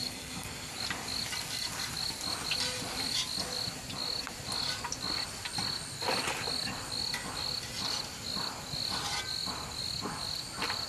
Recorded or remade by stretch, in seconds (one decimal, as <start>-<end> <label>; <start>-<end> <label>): 0.0-0.7 remade; 0.7-10.9 recorded